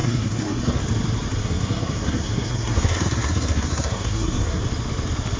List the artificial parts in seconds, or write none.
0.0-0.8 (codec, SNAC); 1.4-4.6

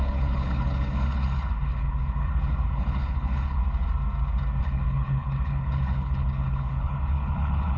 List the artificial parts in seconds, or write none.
0.0-3.6 (codec, HILCodec); 4.6-7.8

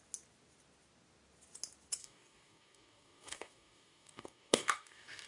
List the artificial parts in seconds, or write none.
2.0-5.3 (codec, DAC)

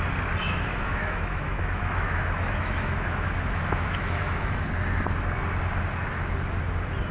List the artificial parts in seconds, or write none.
0.4-4.7 (autoencoder, DAC-VAE)

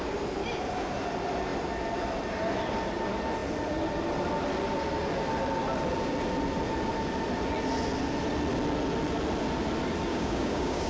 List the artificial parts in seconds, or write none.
10.1-10.9 (codec, DAC)

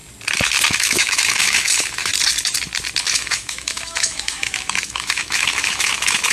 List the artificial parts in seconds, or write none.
0.7-2.1 (autoencoder, DAC-VAE); 3.0-6.3

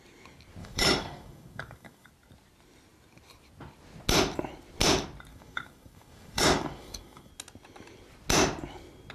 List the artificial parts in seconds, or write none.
0.6-2.1 (codec, DAC); 5.3-7.3